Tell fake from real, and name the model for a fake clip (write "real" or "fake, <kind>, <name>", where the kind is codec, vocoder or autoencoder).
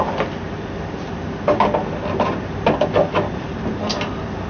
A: real